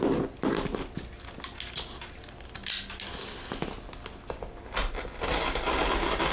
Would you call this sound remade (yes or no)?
no